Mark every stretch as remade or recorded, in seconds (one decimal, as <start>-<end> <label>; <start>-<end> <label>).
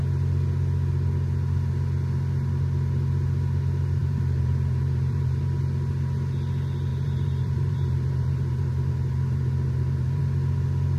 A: 0.0-4.0 recorded; 4.0-5.4 remade; 5.4-6.9 recorded; 6.9-10.2 remade; 10.2-11.0 recorded